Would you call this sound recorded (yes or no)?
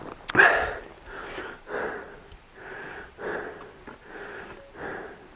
yes